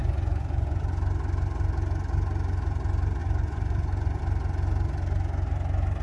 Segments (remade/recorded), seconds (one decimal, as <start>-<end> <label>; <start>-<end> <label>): 0.0-0.8 remade; 0.8-3.2 recorded; 3.2-4.2 remade; 4.2-6.0 recorded